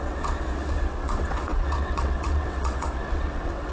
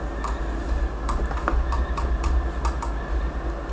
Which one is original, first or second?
second